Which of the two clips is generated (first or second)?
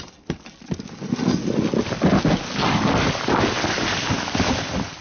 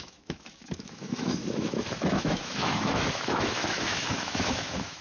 second